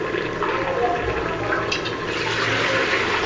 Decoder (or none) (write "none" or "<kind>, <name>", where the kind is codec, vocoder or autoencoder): none